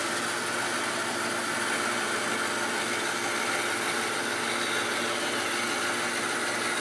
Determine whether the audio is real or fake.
real